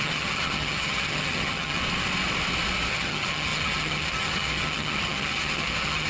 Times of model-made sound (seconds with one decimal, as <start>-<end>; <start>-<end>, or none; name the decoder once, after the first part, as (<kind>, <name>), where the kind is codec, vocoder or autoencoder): 0.0-1.8 (vocoder, HiFi-GAN); 2.9-6.1